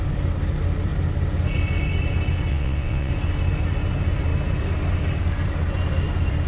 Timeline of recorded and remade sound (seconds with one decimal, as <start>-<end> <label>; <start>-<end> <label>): 0.0-2.5 recorded; 2.5-3.1 remade; 3.1-6.5 recorded